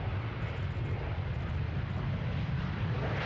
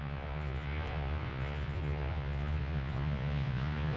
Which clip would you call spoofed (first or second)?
second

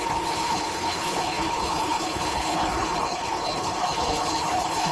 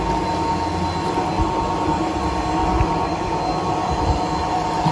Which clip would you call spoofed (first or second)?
first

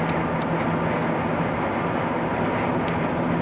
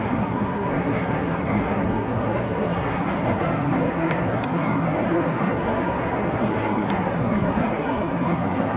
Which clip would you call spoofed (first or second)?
second